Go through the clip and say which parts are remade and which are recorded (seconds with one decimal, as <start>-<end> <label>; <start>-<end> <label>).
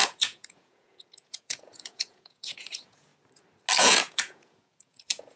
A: 0.0-3.1 remade; 3.1-3.8 recorded; 3.8-5.4 remade